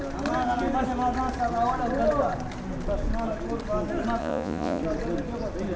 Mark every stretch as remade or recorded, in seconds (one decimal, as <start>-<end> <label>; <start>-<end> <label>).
0.0-4.2 recorded; 4.2-4.8 remade; 4.8-5.8 recorded